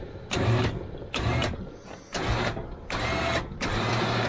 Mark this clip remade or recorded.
recorded